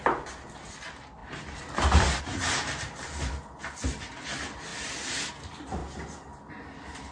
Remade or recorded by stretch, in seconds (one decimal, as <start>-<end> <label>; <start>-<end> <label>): 0.0-1.2 recorded; 1.2-2.2 remade; 2.2-4.7 recorded; 4.7-5.3 remade; 5.3-7.1 recorded